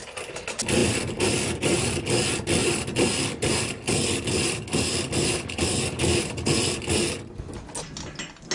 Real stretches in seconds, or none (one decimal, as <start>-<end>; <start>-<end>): 0.0-0.8; 2.0-2.6; 6.9-8.5